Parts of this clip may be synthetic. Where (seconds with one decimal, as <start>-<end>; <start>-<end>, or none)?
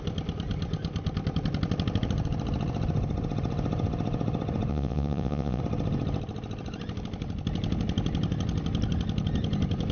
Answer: 4.7-5.6